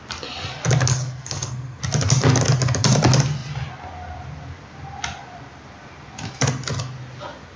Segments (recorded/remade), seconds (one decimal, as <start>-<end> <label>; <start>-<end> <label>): 0.0-0.9 recorded; 0.9-1.8 remade; 1.8-7.6 recorded